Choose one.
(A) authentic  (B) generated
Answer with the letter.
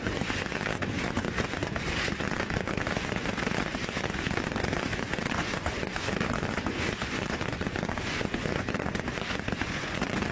B